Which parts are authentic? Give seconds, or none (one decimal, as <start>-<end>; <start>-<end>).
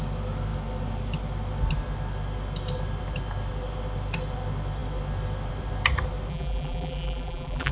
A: 0.0-6.3